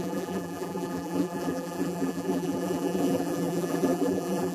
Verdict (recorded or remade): remade